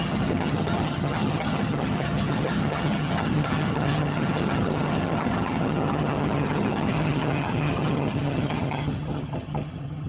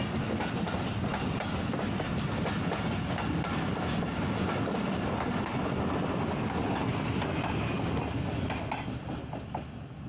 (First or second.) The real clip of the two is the second